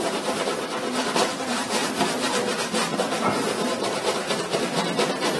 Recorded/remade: remade